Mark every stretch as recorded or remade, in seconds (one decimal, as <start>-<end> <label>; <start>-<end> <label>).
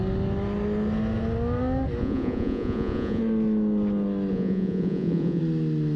0.0-2.0 recorded; 2.0-3.2 remade; 3.2-4.3 recorded; 4.3-5.4 remade; 5.4-6.0 recorded